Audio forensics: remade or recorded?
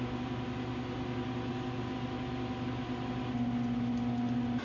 recorded